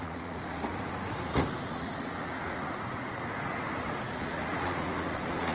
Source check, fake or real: fake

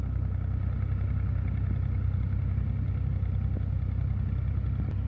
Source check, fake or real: real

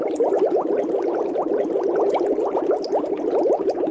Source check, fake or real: real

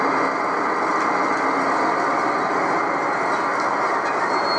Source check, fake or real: real